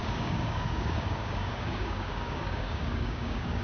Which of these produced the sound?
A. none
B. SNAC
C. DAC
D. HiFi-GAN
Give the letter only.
C